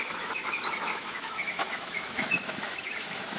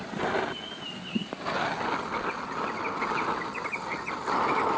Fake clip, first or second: first